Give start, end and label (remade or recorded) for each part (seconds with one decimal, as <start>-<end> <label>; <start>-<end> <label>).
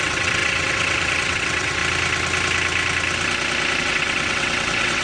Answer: 0.0-1.8 remade; 1.8-3.8 recorded; 3.8-5.0 remade